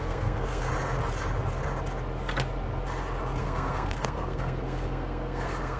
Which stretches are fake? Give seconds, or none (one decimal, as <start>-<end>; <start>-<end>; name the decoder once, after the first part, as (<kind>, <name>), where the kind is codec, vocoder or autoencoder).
0.0-0.7 (codec, SNAC); 3.4-5.8